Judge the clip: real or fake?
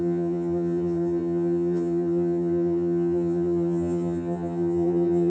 fake